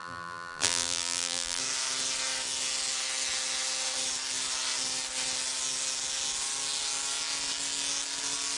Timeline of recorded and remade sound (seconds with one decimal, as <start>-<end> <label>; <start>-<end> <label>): 0.0-1.6 remade; 1.6-8.6 recorded